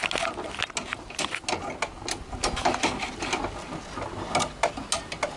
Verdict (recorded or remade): recorded